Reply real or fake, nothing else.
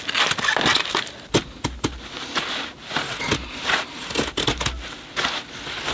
real